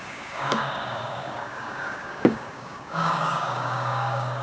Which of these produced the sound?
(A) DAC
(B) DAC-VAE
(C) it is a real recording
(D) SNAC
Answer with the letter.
A